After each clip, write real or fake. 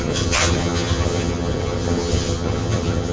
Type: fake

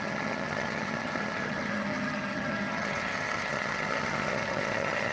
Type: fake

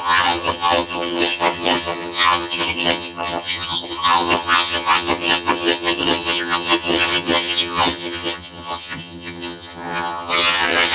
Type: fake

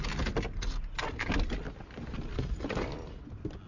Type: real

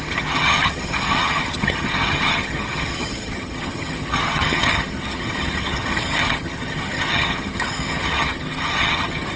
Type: fake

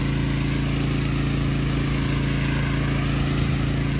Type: real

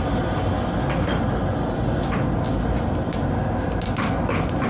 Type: real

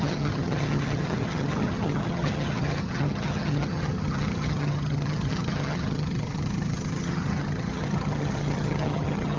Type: fake